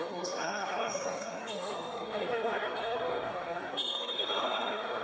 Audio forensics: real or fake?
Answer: fake